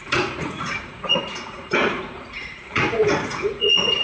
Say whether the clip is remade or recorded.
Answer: remade